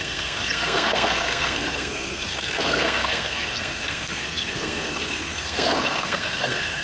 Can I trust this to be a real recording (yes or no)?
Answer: no